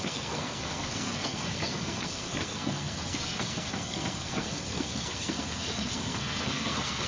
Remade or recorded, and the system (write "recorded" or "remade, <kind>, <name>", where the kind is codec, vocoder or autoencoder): remade, codec, SNAC